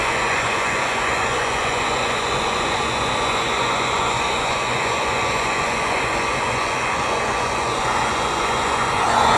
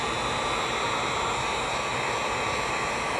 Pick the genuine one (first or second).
second